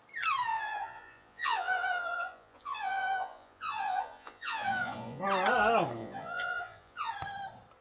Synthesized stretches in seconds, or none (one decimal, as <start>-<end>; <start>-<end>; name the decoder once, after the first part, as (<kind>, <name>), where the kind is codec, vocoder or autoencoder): 0.5-5.2 (vocoder, Vocos); 6.0-7.1